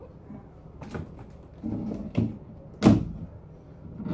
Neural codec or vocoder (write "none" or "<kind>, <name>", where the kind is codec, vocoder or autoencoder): none